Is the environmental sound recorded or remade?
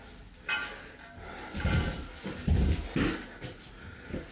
recorded